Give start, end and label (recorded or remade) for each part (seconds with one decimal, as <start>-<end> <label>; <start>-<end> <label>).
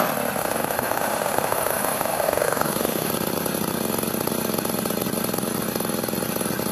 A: 0.0-0.4 recorded; 0.4-3.1 remade; 3.1-6.7 recorded